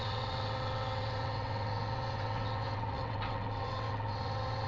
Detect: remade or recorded remade